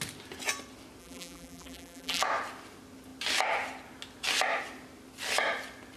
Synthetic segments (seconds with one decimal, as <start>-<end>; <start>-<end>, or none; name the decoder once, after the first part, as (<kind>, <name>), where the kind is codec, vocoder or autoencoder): 1.0-2.2 (vocoder, BigVGAN v2)